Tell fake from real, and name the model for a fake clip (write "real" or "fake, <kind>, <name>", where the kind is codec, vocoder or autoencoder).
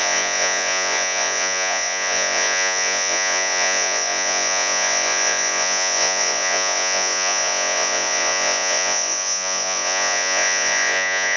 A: fake, vocoder, Vocos